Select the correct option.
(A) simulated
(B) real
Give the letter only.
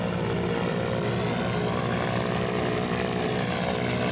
B